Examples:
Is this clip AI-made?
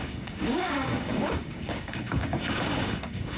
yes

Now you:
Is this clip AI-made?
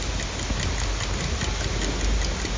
no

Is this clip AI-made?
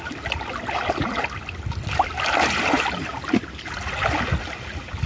no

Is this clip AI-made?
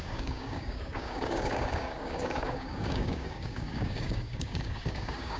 yes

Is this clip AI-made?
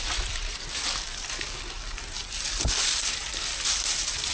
no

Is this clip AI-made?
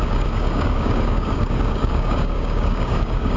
yes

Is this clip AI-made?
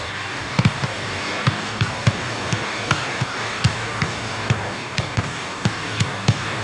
yes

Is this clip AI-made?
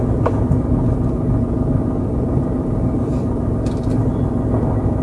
no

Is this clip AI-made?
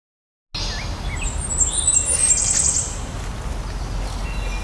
no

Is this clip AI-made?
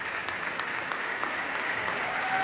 yes